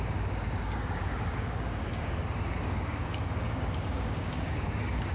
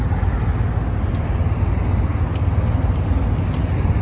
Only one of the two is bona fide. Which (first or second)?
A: second